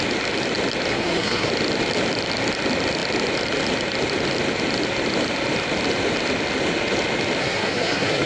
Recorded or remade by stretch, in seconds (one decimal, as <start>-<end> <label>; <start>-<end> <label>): 0.0-0.9 recorded; 0.9-1.5 remade; 1.5-7.4 recorded; 7.4-8.3 remade